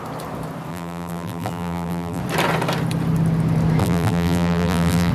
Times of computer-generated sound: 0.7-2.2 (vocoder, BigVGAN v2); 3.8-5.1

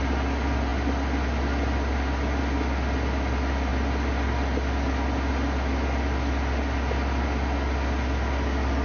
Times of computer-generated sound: none

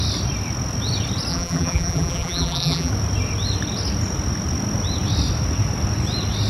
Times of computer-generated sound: 1.3-2.9 (vocoder, BigVGAN v2)

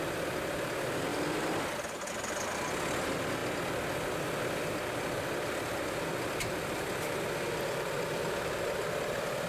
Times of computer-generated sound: 0.0-1.1 (vocoder, BigVGAN v2); 2.1-3.4; 5.6-9.5

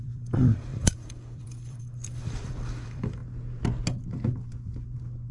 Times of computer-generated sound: 0.0-3.2 (vocoder, BigVGAN v2)

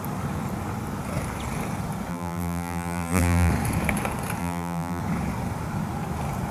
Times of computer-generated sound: 2.1-3.5 (vocoder, BigVGAN v2); 4.4-5.0

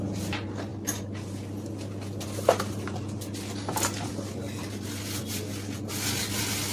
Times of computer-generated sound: none

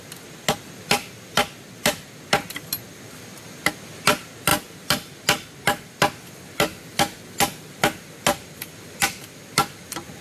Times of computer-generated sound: none